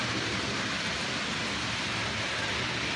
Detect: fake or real real